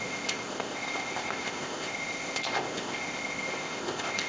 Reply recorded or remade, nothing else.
remade